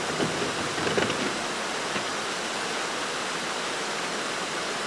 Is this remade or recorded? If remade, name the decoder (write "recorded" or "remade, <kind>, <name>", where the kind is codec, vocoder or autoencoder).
recorded